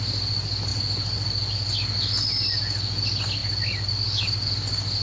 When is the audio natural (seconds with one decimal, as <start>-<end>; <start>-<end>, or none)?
0.0-5.0